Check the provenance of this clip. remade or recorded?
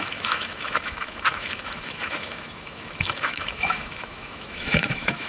remade